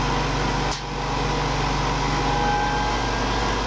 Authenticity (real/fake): fake